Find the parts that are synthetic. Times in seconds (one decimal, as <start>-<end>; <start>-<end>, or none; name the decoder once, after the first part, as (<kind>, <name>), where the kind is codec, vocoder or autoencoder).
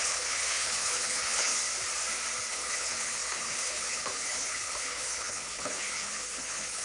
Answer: 0.0-1.5 (codec, HILCodec); 2.5-6.8